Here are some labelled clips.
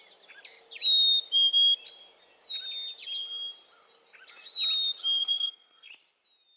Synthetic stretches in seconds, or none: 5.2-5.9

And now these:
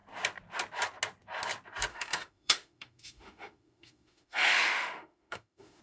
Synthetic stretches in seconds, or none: 1.9-5.8

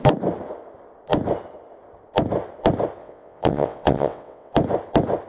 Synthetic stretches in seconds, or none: 3.0-4.5

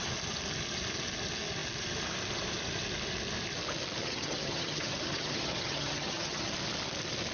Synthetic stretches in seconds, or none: 4.0-6.5

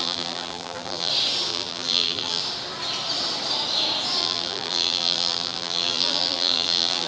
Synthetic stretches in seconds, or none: 0.0-1.1; 1.5-2.4; 4.2-7.1

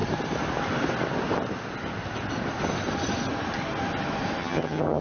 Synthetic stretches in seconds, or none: 4.4-5.0